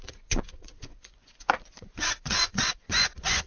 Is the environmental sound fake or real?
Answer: fake